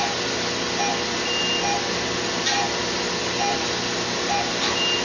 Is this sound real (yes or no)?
yes